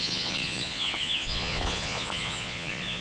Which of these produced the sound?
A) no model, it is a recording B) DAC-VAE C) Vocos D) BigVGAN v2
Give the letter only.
C